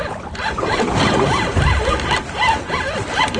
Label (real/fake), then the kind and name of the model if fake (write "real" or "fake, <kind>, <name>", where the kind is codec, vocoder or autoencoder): real